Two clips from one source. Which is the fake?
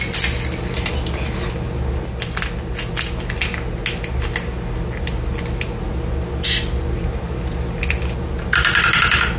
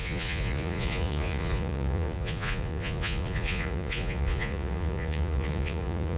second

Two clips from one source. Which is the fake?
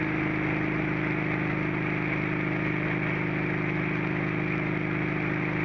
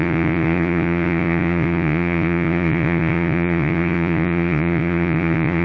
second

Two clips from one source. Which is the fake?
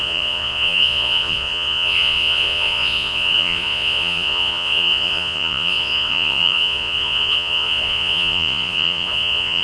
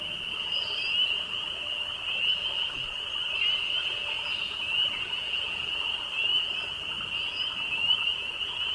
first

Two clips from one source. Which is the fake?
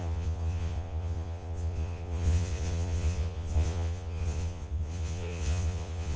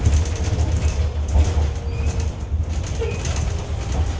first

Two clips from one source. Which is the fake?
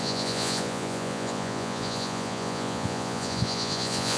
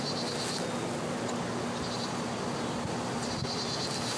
first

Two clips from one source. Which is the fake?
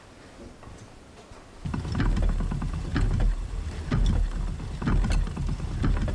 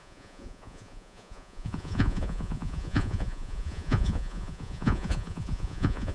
second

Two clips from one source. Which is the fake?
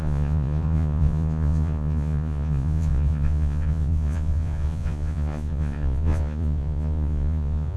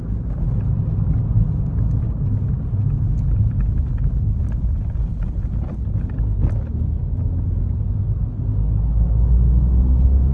first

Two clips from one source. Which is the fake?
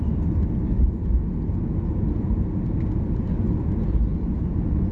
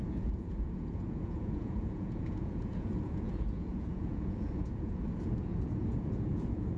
second